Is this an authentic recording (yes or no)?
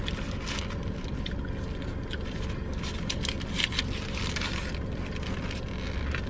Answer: yes